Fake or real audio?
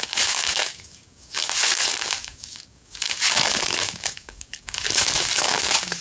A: fake